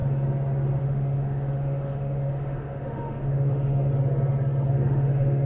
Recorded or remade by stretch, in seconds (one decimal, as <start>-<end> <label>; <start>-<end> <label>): 0.0-0.8 recorded; 0.8-3.9 remade; 3.9-4.7 recorded; 4.7-5.5 remade